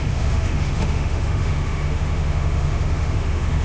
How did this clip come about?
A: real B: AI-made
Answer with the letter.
B